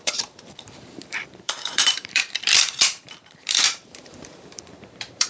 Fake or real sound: fake